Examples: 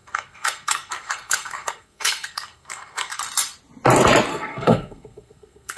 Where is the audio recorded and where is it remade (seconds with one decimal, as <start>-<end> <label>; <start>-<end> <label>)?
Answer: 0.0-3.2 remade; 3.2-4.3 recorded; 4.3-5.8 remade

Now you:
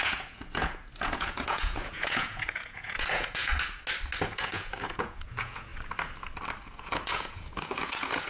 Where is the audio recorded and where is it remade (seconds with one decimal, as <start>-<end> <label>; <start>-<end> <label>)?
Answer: 0.0-3.5 remade; 3.5-4.2 recorded; 4.2-5.7 remade; 5.7-6.6 recorded; 6.6-8.3 remade

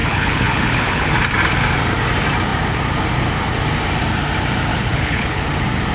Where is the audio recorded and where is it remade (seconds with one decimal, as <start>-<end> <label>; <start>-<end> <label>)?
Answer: 0.0-1.1 remade; 1.1-4.7 recorded; 4.7-5.4 remade; 5.4-5.9 recorded

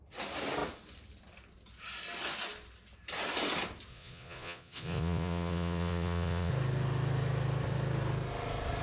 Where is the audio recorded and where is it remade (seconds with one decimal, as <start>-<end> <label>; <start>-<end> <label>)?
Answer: 0.0-3.9 recorded; 3.9-6.5 remade; 6.5-8.8 recorded

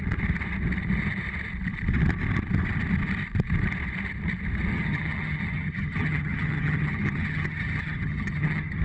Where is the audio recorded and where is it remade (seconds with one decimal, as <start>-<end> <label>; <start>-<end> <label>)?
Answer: 0.0-4.7 recorded; 4.7-8.8 remade

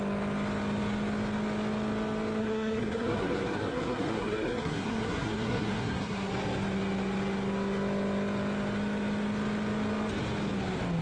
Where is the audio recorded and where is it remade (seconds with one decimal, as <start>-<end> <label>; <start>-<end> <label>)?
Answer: 0.0-2.4 recorded; 2.4-6.3 remade; 6.3-11.0 recorded